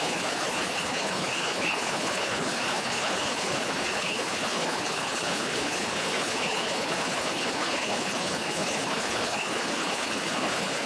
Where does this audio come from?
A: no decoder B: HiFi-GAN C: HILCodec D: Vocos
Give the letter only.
C